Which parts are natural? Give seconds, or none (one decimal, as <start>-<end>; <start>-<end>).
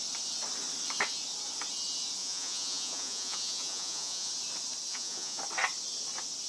0.0-2.2; 4.3-4.9; 5.4-6.5